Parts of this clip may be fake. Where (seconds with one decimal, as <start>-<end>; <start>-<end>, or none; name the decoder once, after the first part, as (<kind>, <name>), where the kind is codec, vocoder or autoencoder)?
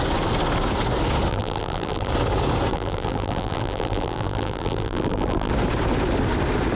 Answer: 1.3-2.1 (vocoder, BigVGAN v2); 2.7-5.5